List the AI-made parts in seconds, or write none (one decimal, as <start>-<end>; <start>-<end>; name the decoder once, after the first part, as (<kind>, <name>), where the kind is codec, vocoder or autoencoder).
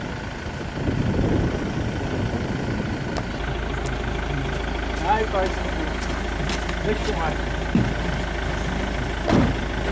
none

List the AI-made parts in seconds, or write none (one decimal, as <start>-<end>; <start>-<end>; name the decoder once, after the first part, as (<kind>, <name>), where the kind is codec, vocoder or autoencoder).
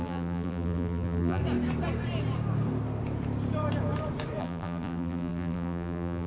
0.0-1.4 (vocoder, BigVGAN v2); 4.4-6.3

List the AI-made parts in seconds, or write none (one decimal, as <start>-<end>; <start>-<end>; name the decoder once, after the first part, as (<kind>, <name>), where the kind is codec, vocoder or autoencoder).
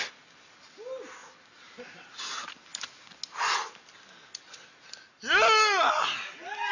1.2-2.3 (vocoder, BigVGAN v2)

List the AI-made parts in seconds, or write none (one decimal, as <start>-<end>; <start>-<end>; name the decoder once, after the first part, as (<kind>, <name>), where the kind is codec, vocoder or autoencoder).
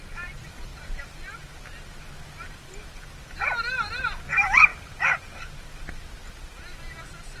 4.7-6.2 (vocoder, BigVGAN v2)